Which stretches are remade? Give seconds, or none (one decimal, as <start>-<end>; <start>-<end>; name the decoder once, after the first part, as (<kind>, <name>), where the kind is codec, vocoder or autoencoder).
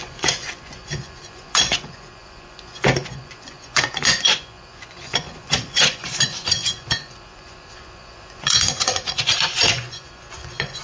0.0-10.8 (vocoder, Vocos)